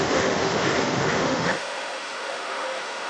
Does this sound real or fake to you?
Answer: fake